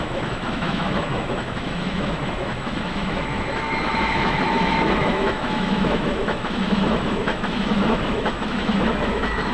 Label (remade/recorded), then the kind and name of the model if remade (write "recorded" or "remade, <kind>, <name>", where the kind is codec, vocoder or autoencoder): remade, autoencoder, DAC-VAE